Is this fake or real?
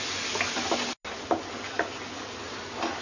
real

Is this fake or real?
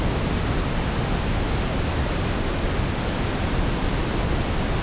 real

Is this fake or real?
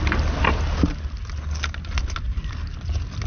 real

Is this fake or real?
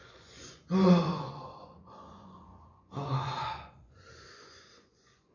fake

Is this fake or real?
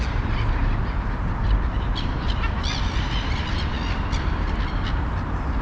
real